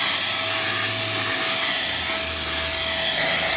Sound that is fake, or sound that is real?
real